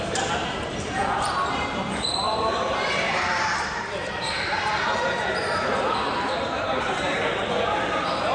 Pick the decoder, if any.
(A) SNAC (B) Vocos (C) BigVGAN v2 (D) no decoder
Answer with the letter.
C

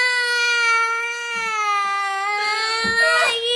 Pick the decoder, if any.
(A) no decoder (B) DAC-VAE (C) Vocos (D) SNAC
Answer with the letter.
A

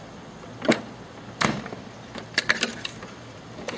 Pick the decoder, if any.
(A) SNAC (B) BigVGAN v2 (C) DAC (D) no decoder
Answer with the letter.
D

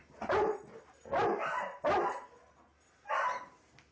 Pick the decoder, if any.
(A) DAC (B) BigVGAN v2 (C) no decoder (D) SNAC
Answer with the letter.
C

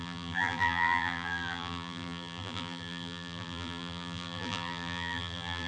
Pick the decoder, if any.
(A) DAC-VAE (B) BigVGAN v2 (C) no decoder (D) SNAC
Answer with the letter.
B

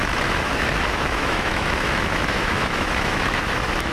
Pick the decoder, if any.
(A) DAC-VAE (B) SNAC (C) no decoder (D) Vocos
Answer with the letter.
A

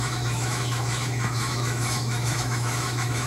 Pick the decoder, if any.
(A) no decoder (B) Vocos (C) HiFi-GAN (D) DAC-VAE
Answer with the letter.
D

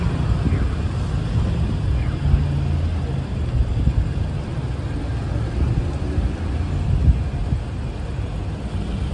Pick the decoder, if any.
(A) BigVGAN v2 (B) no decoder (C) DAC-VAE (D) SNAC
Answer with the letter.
B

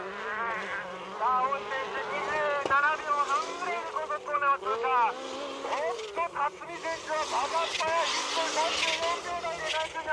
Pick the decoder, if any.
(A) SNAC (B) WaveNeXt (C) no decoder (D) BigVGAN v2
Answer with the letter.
C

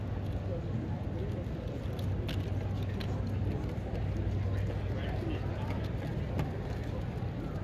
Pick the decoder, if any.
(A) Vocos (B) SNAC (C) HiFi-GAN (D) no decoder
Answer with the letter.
D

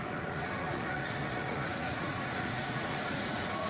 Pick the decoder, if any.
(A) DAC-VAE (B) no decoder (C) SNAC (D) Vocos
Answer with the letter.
D